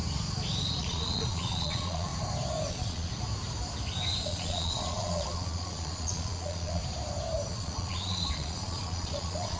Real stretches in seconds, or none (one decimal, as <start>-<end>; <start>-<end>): 0.0-0.8; 2.1-2.7; 3.1-4.2; 6.8-7.5